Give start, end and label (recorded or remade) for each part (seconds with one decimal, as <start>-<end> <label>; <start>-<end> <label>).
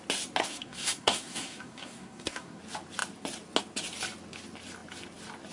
0.0-0.4 recorded; 0.4-2.6 remade; 2.6-5.5 recorded